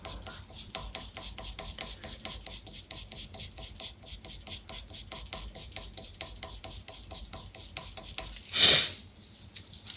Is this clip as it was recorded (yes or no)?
yes